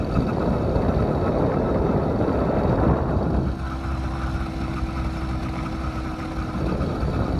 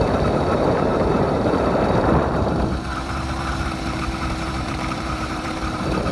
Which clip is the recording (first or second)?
first